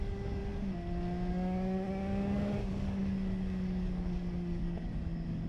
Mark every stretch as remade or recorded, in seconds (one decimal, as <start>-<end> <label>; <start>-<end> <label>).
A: 0.0-0.4 remade; 0.4-1.3 recorded; 1.3-5.5 remade